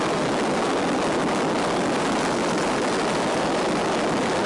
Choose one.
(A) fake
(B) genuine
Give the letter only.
B